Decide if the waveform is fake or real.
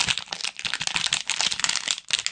real